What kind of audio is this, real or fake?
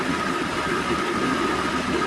real